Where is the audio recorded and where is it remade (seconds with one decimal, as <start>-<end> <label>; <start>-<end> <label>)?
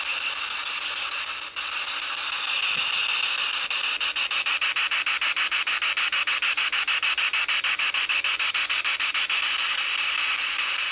0.0-10.9 recorded